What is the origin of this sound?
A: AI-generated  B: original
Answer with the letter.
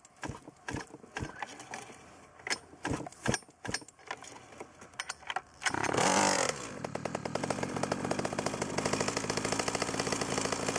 B